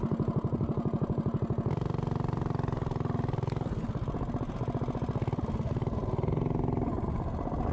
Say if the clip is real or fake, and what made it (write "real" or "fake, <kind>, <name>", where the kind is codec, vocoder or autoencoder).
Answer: real